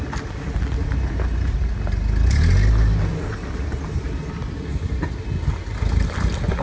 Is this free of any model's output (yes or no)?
yes